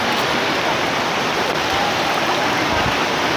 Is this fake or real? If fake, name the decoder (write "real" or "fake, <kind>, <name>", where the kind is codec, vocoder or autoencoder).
real